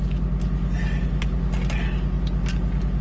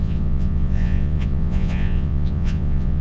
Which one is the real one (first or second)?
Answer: first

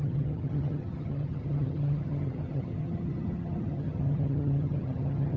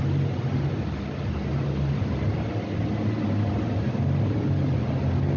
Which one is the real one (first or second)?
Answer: second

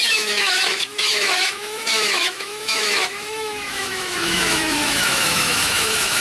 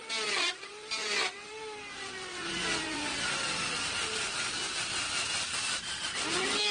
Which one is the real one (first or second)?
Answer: second